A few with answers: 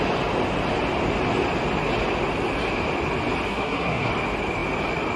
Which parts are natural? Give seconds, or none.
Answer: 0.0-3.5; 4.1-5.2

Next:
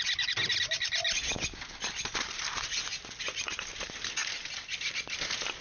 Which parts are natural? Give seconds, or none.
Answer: 0.0-5.6

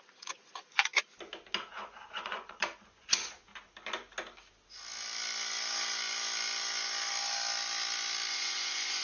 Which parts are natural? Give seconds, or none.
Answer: 0.9-1.7; 3.5-8.3